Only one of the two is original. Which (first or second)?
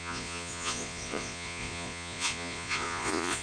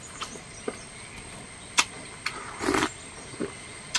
second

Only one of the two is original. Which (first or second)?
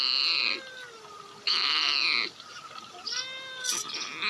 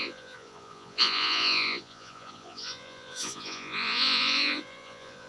first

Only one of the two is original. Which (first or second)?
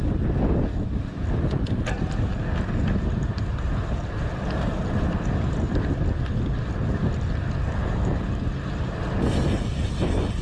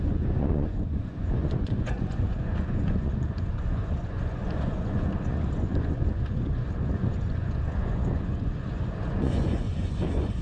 first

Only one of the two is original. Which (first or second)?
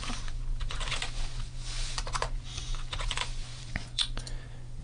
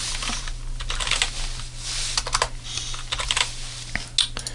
second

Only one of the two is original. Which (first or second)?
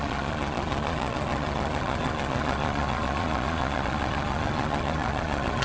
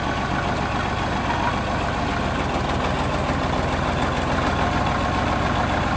second